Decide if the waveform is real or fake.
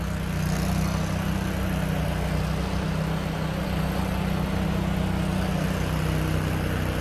real